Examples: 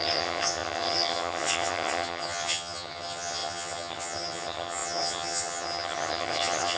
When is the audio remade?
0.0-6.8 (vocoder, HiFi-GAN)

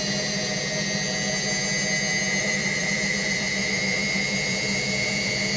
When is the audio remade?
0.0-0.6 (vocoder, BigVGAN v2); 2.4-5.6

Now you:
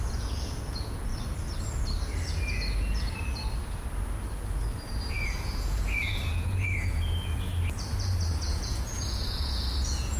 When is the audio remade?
0.0-1.1 (vocoder, Vocos); 5.1-7.5; 8.5-10.2

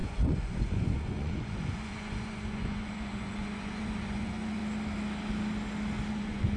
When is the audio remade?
0.0-4.6 (vocoder, Vocos); 6.1-6.6

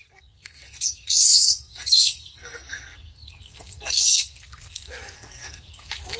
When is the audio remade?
0.0-6.2 (codec, SNAC)

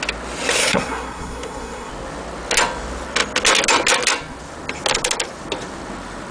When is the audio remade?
0.6-1.9 (codec, SNAC)

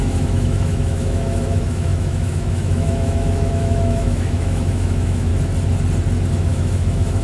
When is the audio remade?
0.0-5.3 (autoencoder, DAC-VAE); 6.3-7.2